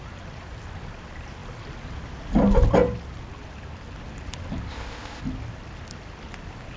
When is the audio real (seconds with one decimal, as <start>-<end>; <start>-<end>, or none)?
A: 0.0-4.7; 5.2-6.8